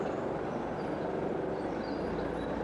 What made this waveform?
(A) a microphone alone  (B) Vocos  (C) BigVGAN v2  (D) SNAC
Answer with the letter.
A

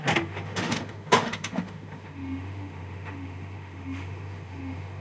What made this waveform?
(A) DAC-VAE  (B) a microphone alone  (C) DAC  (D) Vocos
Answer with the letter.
A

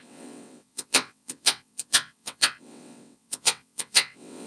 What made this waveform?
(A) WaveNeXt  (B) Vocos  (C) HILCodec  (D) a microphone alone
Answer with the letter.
A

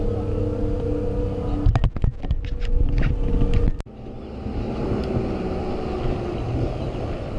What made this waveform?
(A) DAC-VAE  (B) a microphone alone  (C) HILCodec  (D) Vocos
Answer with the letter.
B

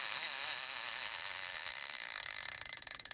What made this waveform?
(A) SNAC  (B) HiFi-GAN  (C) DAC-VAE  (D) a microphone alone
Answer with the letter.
C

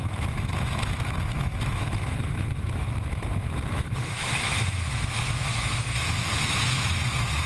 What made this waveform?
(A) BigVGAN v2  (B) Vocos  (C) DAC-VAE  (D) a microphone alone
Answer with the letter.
C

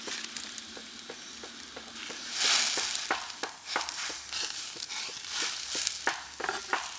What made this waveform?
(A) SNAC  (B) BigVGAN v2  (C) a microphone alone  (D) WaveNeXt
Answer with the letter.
C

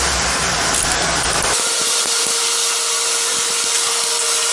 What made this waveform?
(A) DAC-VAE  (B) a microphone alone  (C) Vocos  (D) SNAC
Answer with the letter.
B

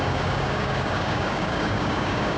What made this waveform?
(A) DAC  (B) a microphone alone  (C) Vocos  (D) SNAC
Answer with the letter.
A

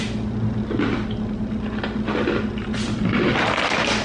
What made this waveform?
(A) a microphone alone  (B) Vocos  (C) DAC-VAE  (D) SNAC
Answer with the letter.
A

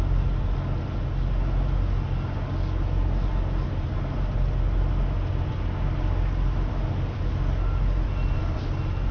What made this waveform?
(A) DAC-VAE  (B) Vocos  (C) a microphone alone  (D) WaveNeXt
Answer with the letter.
C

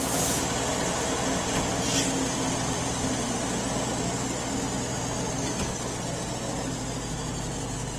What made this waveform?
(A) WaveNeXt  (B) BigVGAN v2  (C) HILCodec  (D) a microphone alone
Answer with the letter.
D